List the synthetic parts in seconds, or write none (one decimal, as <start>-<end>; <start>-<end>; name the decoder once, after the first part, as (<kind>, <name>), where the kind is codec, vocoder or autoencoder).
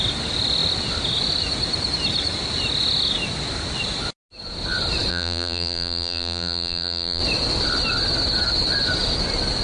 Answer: 5.1-7.2 (vocoder, BigVGAN v2)